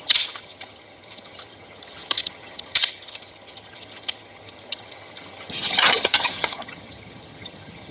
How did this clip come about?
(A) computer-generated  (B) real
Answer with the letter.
A